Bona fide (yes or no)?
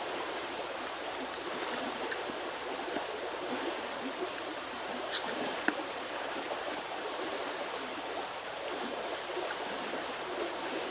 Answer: no